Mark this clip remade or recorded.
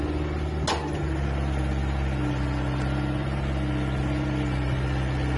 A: recorded